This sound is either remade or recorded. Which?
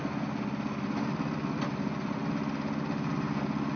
recorded